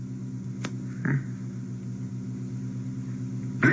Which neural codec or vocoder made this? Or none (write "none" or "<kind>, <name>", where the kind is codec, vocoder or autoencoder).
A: none